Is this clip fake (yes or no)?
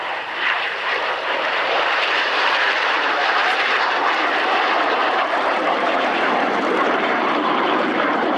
yes